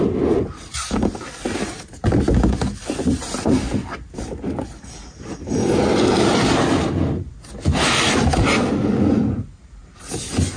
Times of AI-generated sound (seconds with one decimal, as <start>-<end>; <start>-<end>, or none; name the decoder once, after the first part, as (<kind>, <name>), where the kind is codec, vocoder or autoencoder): none